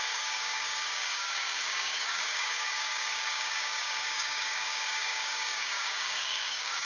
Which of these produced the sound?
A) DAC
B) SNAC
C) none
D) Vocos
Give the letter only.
A